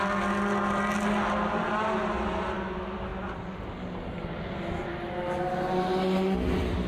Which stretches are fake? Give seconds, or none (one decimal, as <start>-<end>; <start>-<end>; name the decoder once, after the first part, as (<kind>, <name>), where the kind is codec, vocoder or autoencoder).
none

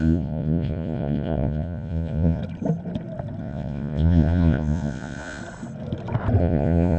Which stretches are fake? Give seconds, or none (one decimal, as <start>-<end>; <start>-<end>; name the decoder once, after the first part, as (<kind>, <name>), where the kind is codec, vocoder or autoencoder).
0.0-2.4 (vocoder, Vocos); 3.4-5.4; 6.4-7.0

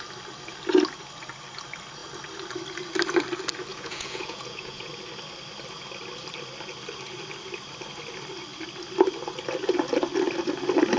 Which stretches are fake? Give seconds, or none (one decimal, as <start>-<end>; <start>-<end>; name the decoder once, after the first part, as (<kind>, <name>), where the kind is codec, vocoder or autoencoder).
3.7-4.9 (vocoder, Vocos)

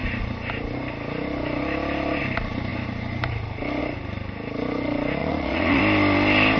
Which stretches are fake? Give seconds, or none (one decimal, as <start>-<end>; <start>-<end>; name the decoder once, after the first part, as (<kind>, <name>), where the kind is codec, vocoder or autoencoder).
5.2-5.8 (vocoder, Vocos)

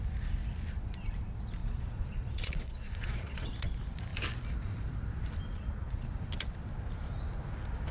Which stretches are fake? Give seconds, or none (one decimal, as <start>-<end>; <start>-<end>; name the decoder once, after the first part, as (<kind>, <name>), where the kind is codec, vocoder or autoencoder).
1.6-3.5 (vocoder, Vocos); 5.5-6.1

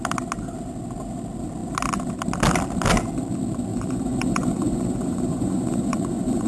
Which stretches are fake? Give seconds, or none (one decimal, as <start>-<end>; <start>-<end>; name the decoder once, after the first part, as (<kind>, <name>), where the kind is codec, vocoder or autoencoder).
3.7-6.5 (vocoder, Vocos)